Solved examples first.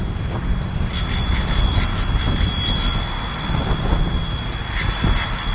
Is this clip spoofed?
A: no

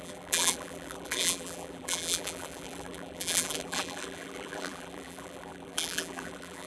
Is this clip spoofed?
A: yes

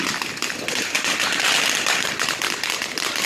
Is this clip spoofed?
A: yes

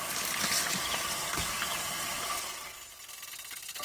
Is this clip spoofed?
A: no